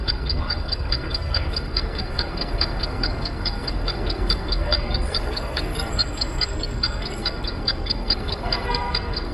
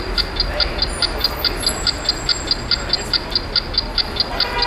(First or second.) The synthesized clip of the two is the first